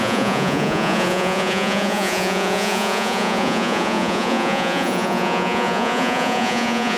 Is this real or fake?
fake